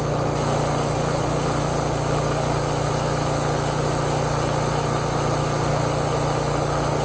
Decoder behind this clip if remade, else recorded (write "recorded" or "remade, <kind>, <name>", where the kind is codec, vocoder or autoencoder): recorded